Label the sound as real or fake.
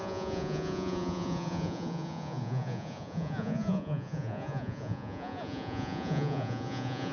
fake